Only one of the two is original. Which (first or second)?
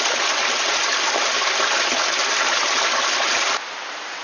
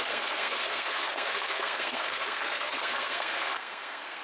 first